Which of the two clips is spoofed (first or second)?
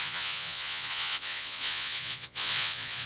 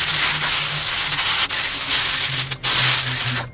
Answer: first